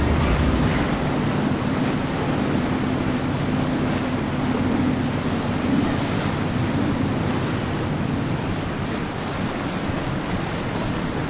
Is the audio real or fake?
real